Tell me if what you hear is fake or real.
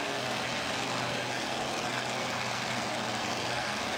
fake